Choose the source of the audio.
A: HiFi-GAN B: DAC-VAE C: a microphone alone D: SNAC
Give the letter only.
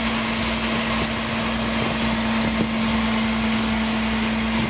C